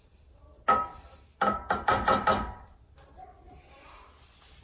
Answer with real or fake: real